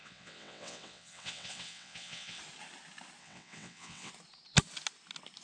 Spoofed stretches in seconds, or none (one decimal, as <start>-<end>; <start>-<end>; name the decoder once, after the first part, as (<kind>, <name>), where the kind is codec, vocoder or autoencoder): 0.0-2.4 (vocoder, WaveNeXt); 3.2-4.1

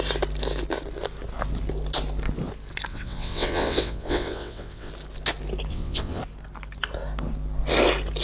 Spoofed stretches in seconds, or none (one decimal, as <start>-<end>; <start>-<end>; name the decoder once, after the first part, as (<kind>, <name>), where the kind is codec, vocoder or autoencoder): 2.9-4.9 (vocoder, WaveNeXt); 5.7-6.2

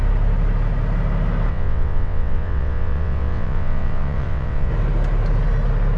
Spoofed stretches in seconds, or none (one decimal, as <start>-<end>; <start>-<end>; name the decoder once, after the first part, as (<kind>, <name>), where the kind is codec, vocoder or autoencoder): 1.5-4.7 (vocoder, WaveNeXt)

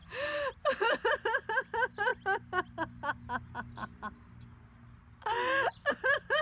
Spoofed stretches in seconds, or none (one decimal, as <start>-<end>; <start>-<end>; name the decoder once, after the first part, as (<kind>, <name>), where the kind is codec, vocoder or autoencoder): none